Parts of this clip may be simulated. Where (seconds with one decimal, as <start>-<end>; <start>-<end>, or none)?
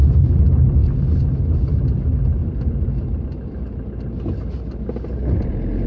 none